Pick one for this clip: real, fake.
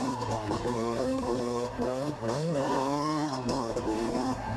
fake